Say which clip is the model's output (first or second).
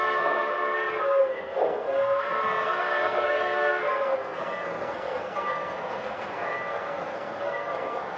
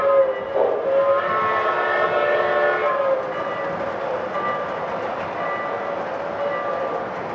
first